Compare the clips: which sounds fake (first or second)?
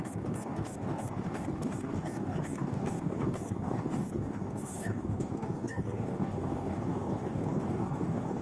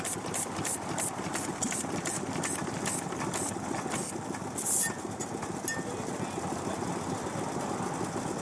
first